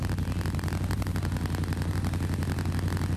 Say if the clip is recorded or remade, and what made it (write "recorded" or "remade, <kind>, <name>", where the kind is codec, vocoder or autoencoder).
recorded